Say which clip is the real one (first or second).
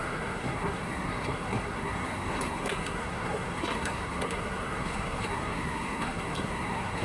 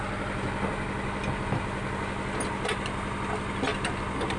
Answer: second